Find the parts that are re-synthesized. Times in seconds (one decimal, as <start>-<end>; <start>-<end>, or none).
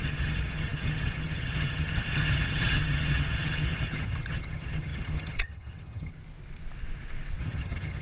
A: 0.0-6.1; 7.4-8.0